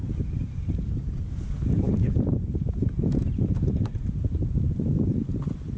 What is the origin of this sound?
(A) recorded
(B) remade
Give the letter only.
B